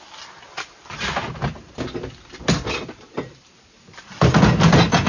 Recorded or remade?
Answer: recorded